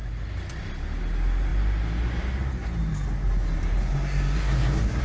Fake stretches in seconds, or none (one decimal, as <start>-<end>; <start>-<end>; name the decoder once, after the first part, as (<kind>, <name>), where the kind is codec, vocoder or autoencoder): 3.8-5.0 (codec, SNAC)